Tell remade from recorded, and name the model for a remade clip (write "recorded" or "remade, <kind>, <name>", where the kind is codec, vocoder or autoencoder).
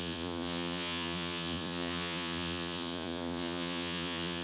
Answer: remade, vocoder, Vocos